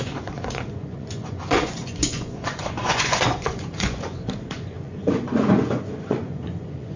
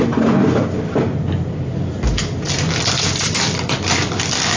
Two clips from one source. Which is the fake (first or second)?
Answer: first